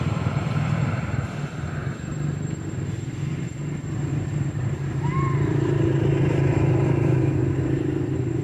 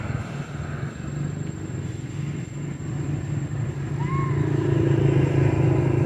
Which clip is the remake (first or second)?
first